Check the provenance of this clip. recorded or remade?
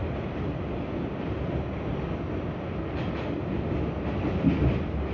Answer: recorded